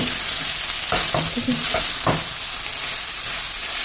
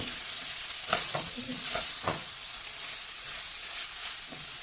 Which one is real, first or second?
first